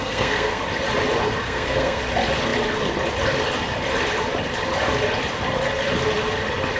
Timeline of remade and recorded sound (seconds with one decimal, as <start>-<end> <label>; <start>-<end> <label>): 0.0-0.6 remade; 0.6-1.4 recorded; 1.4-2.0 remade; 2.0-6.8 recorded

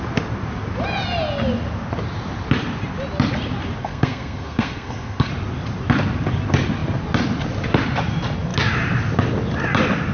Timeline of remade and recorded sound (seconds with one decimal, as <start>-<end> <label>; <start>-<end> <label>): 0.0-3.8 recorded; 3.8-5.3 remade; 5.3-10.1 recorded

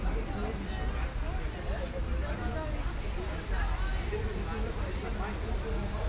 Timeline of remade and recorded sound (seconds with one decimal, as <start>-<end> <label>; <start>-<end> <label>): 0.0-6.1 recorded

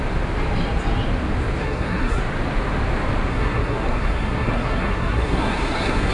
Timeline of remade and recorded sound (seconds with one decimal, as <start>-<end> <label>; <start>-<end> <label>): 0.0-1.6 recorded; 1.6-2.2 remade; 2.2-3.3 recorded; 3.3-6.1 remade

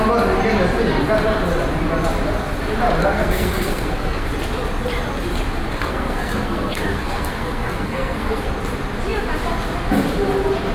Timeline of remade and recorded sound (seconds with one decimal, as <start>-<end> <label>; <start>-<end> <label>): 0.0-3.0 recorded; 3.0-4.3 remade; 4.3-5.7 recorded; 5.7-8.5 remade; 8.5-10.7 recorded

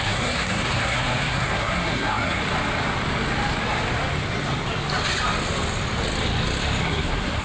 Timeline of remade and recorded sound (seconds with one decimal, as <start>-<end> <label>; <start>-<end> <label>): 0.0-2.4 remade; 2.4-6.8 recorded; 6.8-7.4 remade